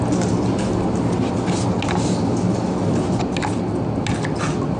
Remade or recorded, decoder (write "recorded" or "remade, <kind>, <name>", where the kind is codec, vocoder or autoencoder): recorded